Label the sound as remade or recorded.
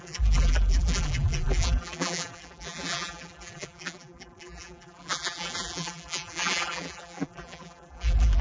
remade